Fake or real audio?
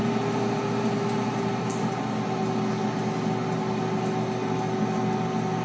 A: real